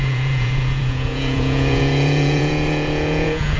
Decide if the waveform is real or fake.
fake